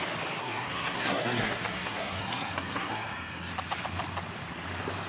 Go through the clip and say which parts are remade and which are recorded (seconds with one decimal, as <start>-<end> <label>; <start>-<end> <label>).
0.0-0.4 recorded; 0.4-3.5 remade; 3.5-5.1 recorded